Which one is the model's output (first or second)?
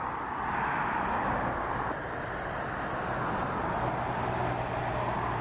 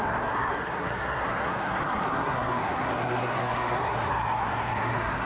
second